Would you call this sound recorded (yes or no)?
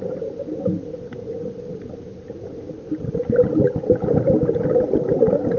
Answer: yes